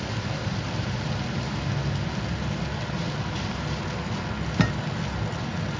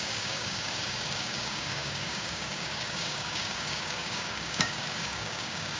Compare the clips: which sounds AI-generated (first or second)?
second